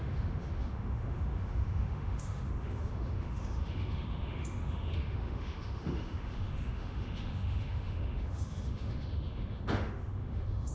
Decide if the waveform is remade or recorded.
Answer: remade